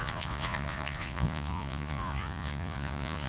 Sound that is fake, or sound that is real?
fake